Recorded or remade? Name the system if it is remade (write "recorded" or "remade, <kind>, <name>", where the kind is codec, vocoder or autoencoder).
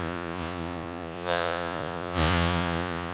remade, vocoder, Vocos